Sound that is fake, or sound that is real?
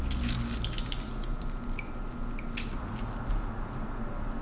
real